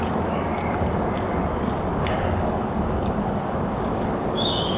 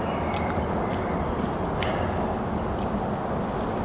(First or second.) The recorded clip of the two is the second